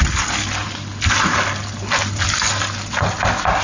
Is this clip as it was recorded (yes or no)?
yes